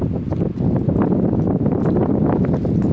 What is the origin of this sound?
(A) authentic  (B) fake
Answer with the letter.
A